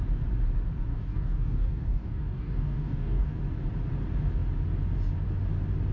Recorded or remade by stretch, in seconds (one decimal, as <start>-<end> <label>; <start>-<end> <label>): 0.0-0.9 recorded; 0.9-3.4 remade; 3.4-5.9 recorded